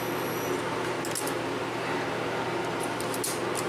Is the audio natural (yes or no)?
yes